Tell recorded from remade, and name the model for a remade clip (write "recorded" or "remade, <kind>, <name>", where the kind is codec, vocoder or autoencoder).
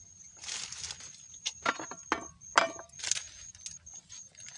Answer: recorded